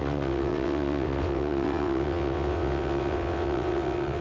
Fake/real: fake